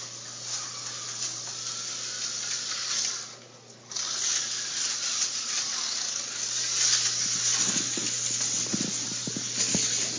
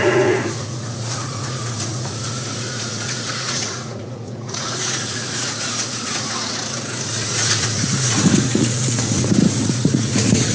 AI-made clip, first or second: second